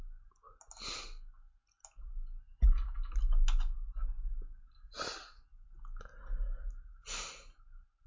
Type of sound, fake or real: real